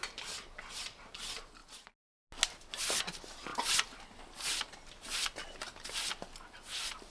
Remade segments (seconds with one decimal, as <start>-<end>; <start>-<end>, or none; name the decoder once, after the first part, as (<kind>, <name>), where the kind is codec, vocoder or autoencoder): none